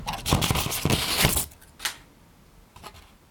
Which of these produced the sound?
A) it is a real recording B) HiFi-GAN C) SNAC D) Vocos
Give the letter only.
A